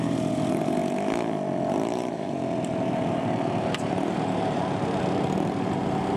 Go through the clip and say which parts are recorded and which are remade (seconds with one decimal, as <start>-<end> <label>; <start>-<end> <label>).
0.0-0.8 remade; 0.8-1.7 recorded; 1.7-6.2 remade